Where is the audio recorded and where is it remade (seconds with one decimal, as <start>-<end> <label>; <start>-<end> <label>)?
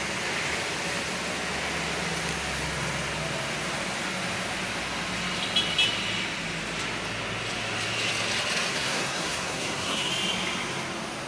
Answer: 0.0-8.7 recorded; 8.7-10.1 remade; 10.1-11.3 recorded